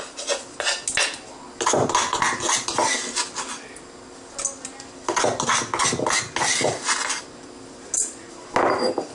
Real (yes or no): yes